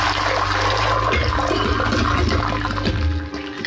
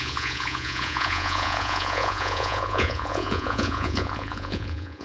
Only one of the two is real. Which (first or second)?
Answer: first